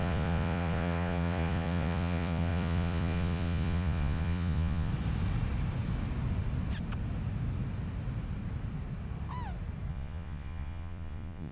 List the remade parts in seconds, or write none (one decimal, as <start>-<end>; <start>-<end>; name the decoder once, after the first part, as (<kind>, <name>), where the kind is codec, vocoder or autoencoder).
0.0-4.9 (vocoder, Vocos); 9.9-11.5